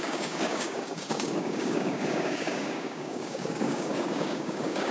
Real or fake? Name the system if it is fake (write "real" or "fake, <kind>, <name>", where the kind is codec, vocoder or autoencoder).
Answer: fake, codec, DAC